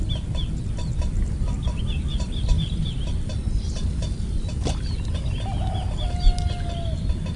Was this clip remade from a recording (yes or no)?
no